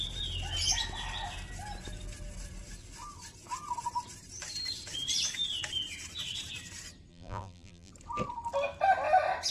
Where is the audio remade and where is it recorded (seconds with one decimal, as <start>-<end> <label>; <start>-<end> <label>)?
0.0-7.1 recorded; 7.1-7.9 remade; 7.9-9.5 recorded